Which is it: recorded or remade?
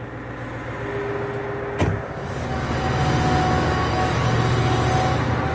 recorded